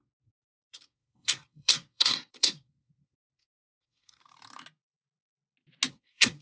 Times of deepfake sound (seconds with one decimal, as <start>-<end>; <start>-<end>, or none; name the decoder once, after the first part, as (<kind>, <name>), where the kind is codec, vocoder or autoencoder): 0.0-4.2 (codec, SNAC); 5.9-6.4